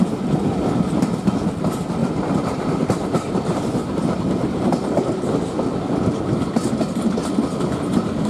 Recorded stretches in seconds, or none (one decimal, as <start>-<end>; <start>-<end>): 0.0-2.0; 3.5-8.3